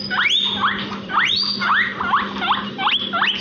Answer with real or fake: real